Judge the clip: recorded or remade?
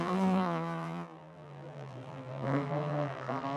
remade